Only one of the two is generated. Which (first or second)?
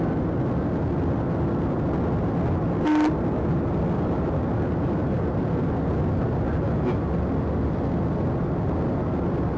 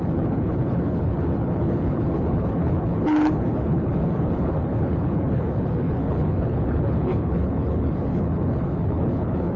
second